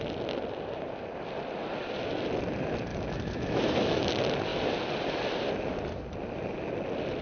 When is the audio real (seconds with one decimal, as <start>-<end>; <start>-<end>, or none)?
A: 0.0-2.9; 4.1-7.2